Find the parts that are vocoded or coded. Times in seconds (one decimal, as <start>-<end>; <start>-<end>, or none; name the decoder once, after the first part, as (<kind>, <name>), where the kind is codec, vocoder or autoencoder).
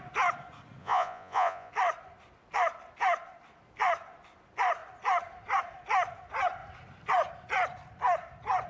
0.8-1.7 (vocoder, Vocos)